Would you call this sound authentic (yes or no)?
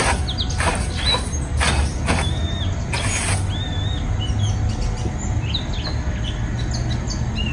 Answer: yes